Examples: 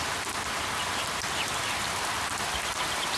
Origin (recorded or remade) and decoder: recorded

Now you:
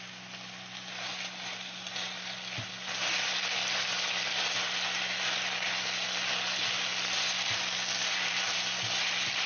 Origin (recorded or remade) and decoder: recorded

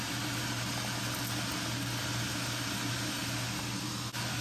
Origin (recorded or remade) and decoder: recorded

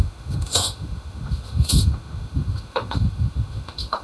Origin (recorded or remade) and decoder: remade, autoencoder, DAC-VAE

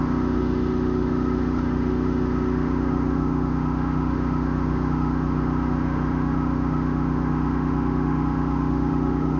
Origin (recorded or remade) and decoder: remade, autoencoder, DAC-VAE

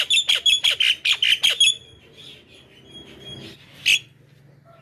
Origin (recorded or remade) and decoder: recorded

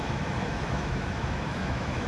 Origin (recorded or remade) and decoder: remade, autoencoder, DAC-VAE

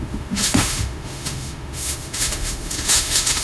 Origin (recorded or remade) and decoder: remade, autoencoder, DAC-VAE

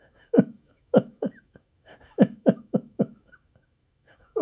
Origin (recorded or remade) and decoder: remade, autoencoder, DAC-VAE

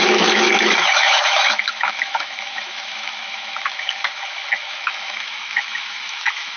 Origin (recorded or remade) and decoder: remade, autoencoder, DAC-VAE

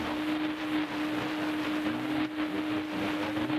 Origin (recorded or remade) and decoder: recorded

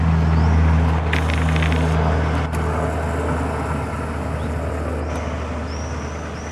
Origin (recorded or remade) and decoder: recorded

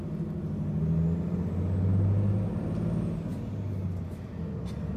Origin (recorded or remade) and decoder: recorded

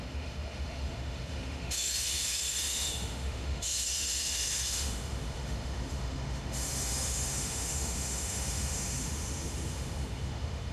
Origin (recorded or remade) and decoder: remade, autoencoder, DAC-VAE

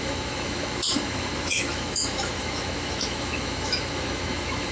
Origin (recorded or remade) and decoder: remade, autoencoder, DAC-VAE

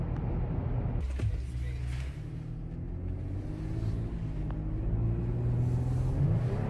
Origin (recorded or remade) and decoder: recorded